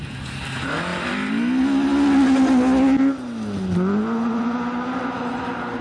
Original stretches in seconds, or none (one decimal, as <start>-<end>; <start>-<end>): 0.0-5.8